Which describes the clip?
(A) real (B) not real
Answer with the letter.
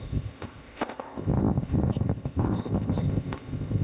B